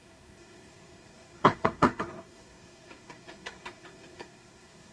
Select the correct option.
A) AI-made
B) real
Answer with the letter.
A